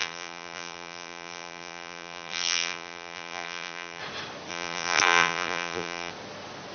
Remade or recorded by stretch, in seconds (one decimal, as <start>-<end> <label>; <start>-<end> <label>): 0.0-4.0 remade; 4.0-4.5 recorded; 4.5-6.1 remade; 6.1-6.7 recorded